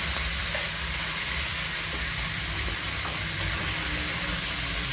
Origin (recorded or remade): recorded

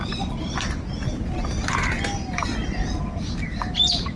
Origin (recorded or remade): recorded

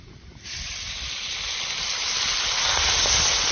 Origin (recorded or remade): recorded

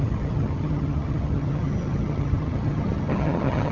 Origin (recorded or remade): remade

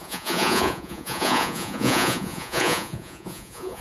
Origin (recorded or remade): remade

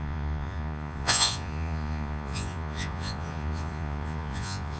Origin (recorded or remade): remade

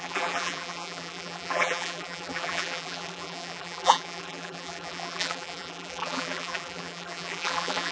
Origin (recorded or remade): remade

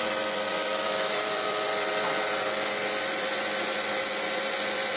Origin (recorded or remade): remade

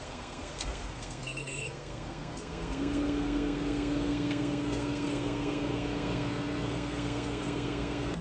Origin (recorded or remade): remade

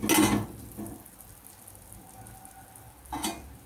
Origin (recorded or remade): recorded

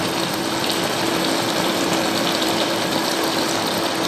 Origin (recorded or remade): remade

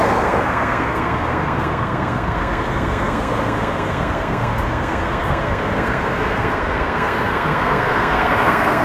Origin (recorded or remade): remade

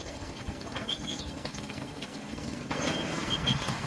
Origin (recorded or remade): remade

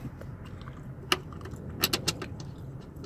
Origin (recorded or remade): recorded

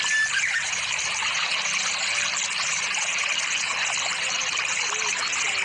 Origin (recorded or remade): recorded